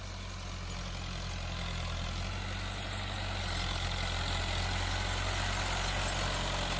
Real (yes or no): yes